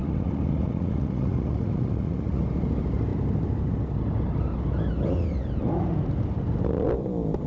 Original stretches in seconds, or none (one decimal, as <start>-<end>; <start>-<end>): 2.4-7.5